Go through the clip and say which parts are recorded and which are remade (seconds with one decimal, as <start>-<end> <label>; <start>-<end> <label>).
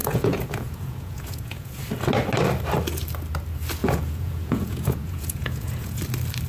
0.0-1.8 remade; 1.8-3.8 recorded; 3.8-6.0 remade; 6.0-6.5 recorded